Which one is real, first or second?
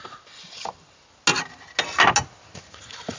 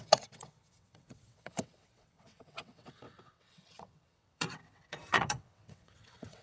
first